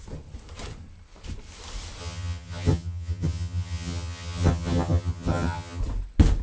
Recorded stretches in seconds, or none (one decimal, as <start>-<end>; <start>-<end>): 0.0-2.0; 5.8-6.4